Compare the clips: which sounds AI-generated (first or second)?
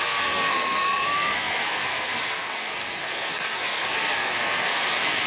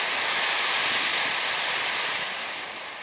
first